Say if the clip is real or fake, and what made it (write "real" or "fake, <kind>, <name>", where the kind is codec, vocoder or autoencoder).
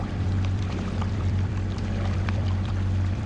fake, vocoder, BigVGAN v2